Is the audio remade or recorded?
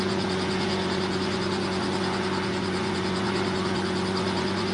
remade